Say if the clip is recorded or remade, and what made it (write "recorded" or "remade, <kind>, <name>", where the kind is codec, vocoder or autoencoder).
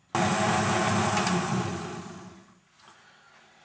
recorded